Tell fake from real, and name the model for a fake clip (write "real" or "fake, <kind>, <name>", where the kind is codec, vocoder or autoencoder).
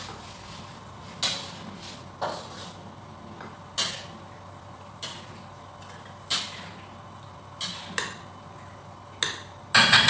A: real